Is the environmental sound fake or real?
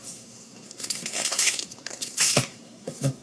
fake